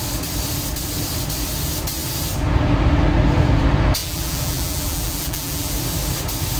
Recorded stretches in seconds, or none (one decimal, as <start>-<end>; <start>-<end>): 0.0-4.0; 5.7-6.6